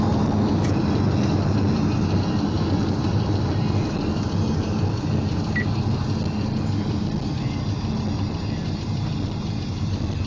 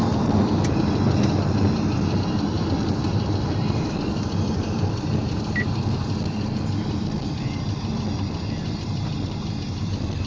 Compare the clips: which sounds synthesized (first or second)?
second